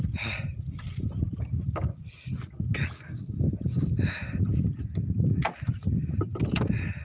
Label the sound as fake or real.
real